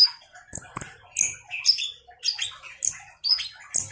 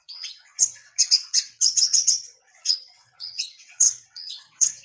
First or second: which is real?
first